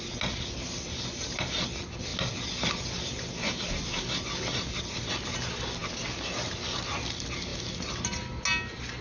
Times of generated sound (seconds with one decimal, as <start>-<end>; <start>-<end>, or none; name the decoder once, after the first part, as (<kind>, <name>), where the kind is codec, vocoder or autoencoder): none